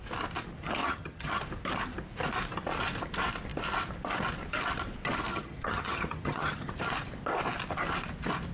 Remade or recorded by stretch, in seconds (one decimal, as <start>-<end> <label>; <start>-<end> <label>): 0.0-0.8 recorded; 0.8-1.4 remade; 1.4-5.3 recorded; 5.3-6.7 remade; 6.7-8.5 recorded